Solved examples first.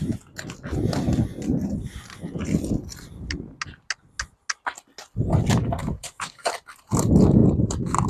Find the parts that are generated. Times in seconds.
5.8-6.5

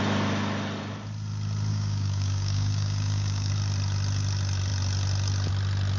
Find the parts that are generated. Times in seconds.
1.7-3.5

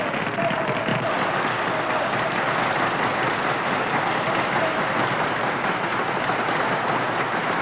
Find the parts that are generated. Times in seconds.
none

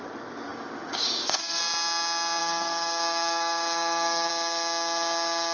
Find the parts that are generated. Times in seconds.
0.5-1.6; 2.4-4.3

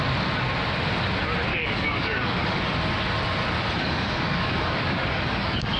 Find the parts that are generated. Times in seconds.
1.5-2.6; 3.8-5.8

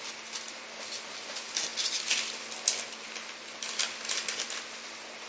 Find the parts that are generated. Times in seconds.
none

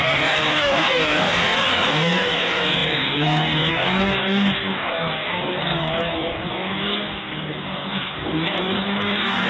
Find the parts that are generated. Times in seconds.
0.0-9.5

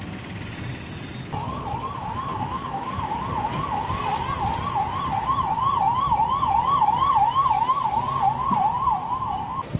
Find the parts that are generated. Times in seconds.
2.3-3.3